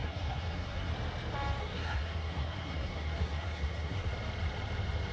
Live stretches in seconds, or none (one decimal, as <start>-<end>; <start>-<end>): 0.9-1.6; 4.1-5.1